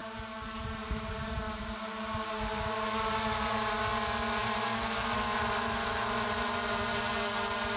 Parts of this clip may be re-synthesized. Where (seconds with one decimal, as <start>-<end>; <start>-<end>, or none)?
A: 0.0-3.8; 4.4-7.8